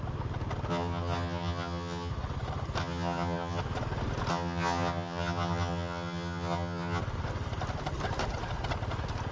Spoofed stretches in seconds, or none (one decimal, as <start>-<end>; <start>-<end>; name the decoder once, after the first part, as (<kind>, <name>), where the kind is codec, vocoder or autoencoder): 0.7-2.1 (vocoder, HiFi-GAN); 2.8-3.6; 4.3-7.0